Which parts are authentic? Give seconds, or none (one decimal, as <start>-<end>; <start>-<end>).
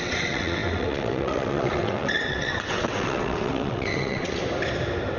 4.4-5.2